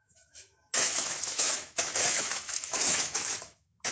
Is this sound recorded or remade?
remade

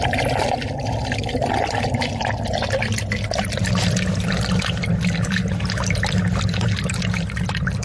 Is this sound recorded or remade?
recorded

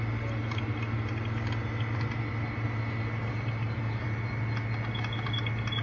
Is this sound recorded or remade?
recorded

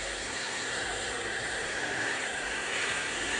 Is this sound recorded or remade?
remade